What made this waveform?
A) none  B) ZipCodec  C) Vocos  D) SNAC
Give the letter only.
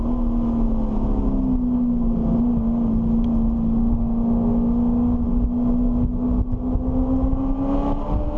A